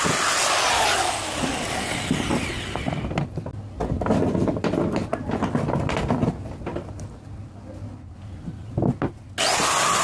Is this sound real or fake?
real